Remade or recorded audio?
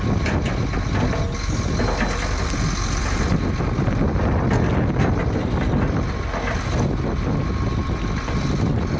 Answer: recorded